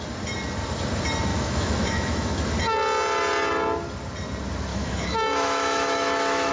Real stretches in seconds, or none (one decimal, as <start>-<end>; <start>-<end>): 0.0-1.3; 2.4-4.7

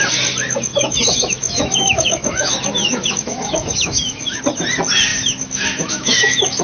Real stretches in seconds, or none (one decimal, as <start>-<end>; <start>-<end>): 0.0-0.7; 4.4-5.1

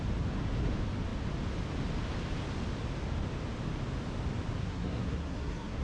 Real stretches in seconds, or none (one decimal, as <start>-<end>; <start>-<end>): 0.0-4.6

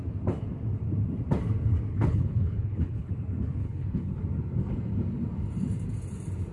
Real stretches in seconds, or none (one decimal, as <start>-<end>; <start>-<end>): 0.0-1.9; 3.1-3.6; 4.2-6.5

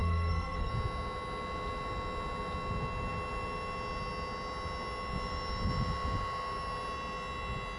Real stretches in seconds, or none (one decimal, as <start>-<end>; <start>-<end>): 0.7-7.8

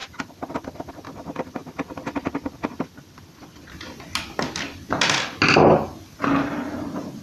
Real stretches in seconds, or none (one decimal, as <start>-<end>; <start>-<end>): 0.0-7.2

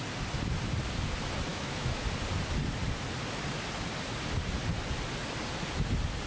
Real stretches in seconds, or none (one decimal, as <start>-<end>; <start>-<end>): 0.0-1.5; 2.0-6.3

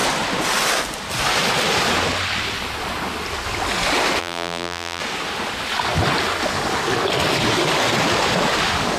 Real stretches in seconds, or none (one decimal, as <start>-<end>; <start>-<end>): 0.0-4.2; 5.0-9.0